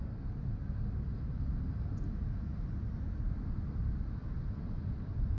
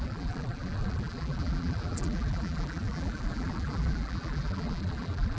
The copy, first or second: second